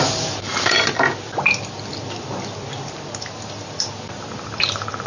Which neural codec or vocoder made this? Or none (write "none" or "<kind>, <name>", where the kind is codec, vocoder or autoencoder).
none